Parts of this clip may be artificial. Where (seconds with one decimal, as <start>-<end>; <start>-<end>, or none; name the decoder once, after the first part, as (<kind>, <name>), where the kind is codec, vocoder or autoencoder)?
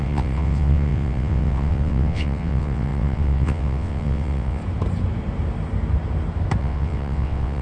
0.0-4.6 (vocoder, WaveNeXt); 6.6-7.6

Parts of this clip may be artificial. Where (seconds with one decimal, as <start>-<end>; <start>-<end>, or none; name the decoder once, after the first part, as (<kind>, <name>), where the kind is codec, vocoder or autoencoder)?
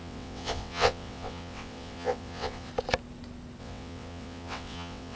0.0-2.7 (vocoder, WaveNeXt); 3.6-5.2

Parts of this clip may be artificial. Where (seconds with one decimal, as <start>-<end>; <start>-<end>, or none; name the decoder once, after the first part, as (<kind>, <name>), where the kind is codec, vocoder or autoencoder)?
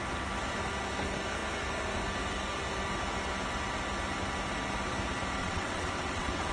5.4-6.5 (vocoder, WaveNeXt)